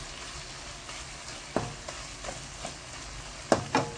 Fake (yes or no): no